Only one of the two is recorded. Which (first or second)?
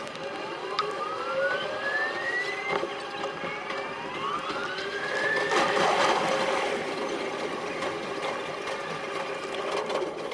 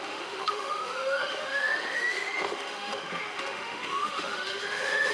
first